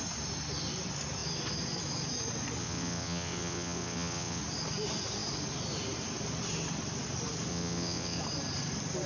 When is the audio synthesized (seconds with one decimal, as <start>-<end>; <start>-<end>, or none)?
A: 2.6-4.4; 7.5-8.2

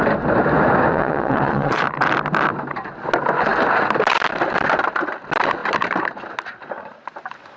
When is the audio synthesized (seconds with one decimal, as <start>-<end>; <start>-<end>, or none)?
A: 0.9-1.8

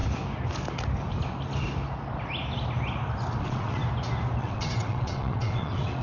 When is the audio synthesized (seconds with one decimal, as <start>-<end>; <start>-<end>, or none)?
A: 3.4-3.8; 4.4-6.0

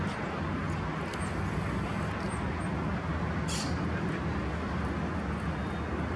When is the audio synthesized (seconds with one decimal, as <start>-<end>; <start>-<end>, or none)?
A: none

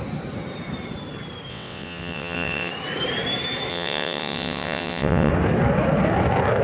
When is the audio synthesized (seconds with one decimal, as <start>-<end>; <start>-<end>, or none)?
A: 1.5-2.7; 3.7-5.3

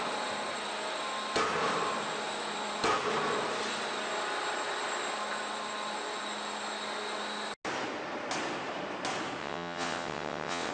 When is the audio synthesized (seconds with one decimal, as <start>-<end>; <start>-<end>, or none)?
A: 9.4-10.7